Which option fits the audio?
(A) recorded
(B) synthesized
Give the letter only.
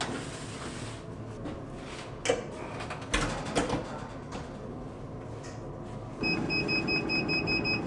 A